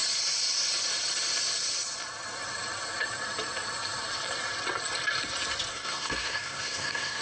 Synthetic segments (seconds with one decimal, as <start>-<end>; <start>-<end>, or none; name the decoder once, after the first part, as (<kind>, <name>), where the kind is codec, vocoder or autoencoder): 5.7-7.2 (codec, SNAC)